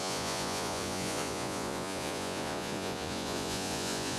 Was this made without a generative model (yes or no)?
no